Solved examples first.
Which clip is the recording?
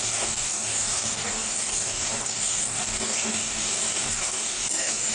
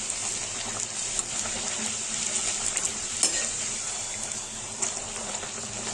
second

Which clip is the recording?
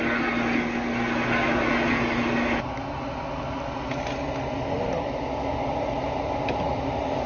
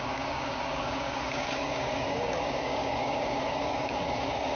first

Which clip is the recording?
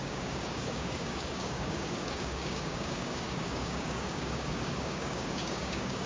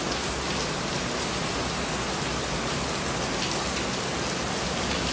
second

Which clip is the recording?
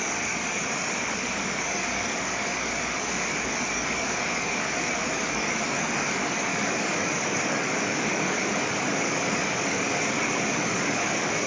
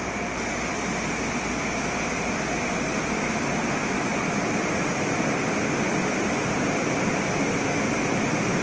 second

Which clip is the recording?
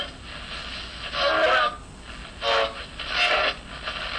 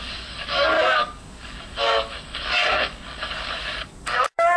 first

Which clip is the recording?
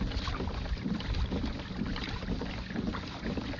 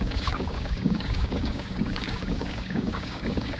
first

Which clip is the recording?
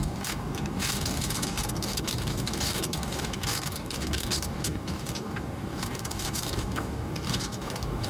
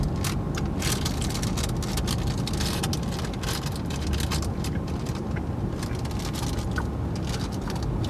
second